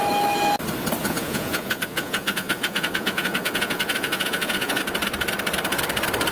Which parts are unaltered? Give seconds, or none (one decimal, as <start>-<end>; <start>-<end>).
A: 0.0-1.0; 4.8-6.3